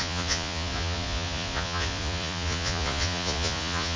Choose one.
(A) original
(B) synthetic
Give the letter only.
B